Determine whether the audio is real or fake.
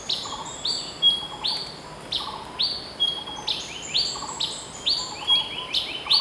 real